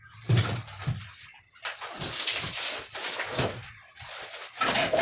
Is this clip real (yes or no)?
yes